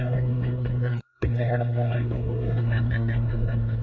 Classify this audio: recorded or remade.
remade